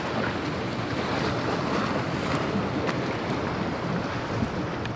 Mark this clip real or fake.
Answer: real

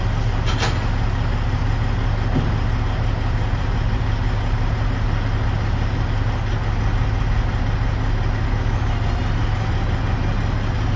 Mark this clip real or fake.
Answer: real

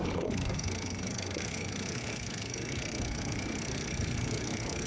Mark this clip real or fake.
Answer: fake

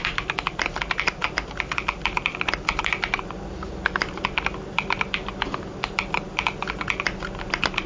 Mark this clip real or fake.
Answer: real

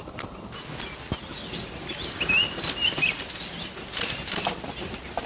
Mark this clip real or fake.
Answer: real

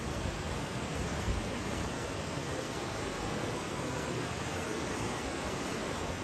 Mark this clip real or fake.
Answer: fake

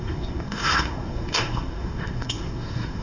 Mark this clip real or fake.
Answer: fake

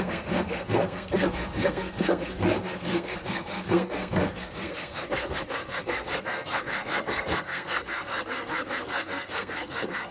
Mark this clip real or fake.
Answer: fake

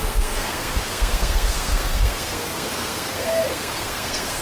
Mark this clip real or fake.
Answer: fake